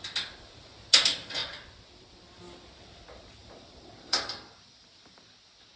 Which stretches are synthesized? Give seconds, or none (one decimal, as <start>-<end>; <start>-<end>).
1.4-2.4; 3.4-5.2